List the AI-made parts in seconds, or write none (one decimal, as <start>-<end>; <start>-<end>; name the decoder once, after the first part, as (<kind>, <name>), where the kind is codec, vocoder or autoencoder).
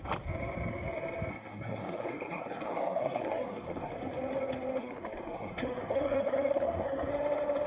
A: 1.3-3.9 (codec, SNAC); 4.8-7.1